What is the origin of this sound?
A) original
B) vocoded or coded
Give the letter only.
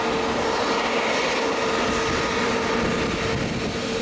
A